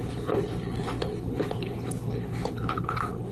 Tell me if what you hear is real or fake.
fake